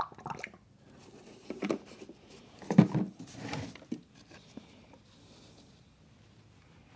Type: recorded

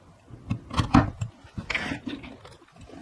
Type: recorded